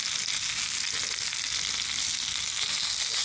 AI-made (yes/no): no